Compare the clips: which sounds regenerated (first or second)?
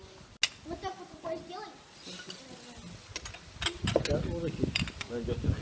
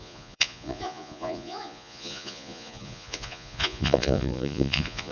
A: second